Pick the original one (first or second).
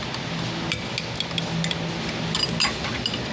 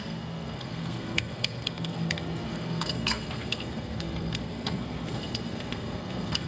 first